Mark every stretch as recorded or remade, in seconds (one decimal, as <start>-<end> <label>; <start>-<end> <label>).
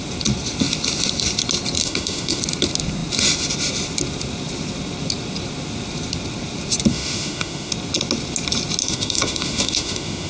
0.0-1.8 recorded; 1.8-2.4 remade; 2.4-6.9 recorded; 6.9-7.7 remade; 7.7-8.8 recorded; 8.8-10.3 remade